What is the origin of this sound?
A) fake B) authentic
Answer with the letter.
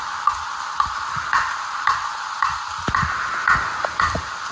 B